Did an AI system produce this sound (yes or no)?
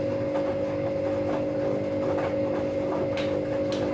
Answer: no